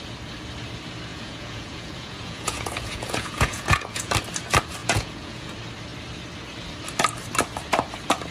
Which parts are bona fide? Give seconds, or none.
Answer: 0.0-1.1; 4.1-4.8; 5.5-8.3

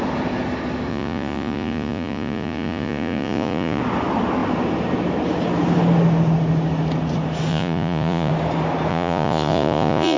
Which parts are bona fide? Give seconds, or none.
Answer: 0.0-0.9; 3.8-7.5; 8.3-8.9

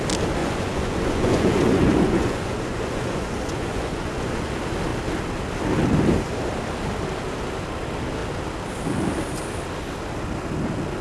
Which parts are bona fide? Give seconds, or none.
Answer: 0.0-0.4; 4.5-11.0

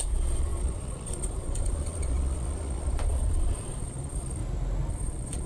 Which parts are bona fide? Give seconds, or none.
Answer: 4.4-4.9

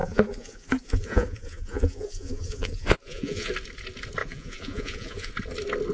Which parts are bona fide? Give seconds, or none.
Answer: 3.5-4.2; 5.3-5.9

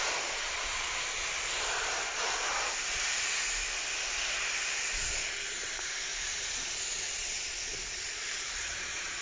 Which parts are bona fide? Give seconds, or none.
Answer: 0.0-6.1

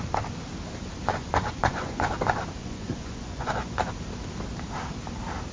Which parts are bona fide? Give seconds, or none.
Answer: 0.0-1.2; 2.1-2.6; 3.9-5.5